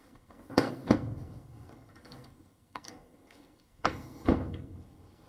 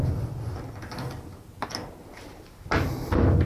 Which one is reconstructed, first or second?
first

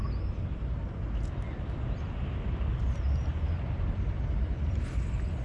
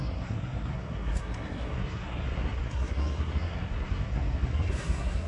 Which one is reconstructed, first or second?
second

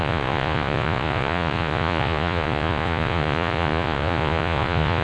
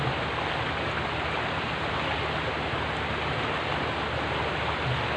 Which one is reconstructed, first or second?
first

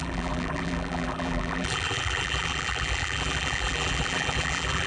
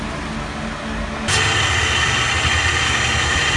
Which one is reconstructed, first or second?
first